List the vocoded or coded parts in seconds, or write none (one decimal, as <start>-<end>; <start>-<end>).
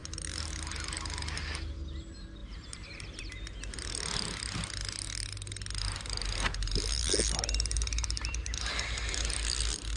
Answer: 2.4-3.3